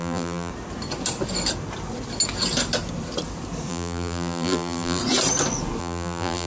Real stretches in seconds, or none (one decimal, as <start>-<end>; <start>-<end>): 0.5-3.7; 5.0-5.8